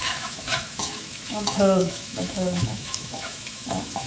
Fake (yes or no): yes